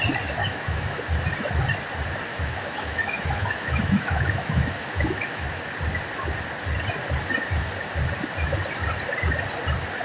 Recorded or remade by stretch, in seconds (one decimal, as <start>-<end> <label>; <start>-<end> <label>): 0.0-0.4 recorded; 0.4-1.0 remade; 1.0-2.3 recorded; 2.3-5.6 remade; 5.6-10.0 recorded